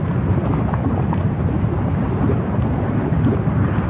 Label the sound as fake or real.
real